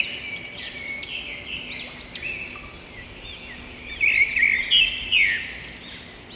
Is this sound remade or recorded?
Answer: recorded